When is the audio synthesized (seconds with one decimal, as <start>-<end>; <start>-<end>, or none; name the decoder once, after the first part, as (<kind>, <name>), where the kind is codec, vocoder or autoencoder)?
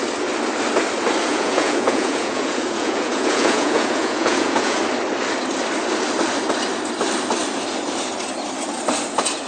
1.3-4.8 (vocoder, Vocos)